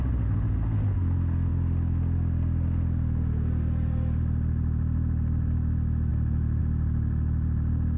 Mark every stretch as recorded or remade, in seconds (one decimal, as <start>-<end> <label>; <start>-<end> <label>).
0.0-8.0 recorded